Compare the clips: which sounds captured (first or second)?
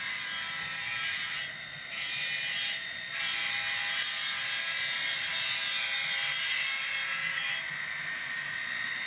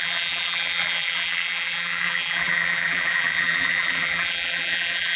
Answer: first